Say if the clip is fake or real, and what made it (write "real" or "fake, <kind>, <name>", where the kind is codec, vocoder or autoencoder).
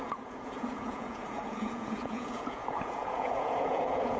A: fake, vocoder, Vocos